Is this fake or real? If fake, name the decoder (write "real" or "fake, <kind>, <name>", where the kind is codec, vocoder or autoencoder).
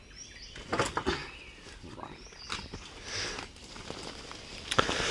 real